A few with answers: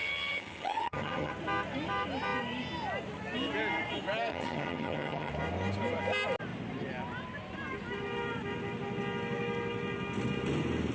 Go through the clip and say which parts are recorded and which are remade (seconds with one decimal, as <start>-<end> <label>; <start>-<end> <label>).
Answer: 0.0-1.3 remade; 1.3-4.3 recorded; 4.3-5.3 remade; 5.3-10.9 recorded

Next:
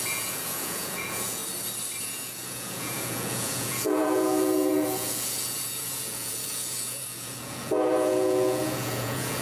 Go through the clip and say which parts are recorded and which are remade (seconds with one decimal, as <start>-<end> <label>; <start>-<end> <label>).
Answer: 0.0-1.4 remade; 1.4-2.0 recorded; 2.0-9.4 remade

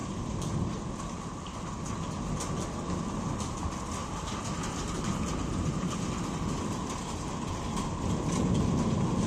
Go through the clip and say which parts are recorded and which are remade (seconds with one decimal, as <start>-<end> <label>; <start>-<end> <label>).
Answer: 0.0-0.6 remade; 0.6-9.3 recorded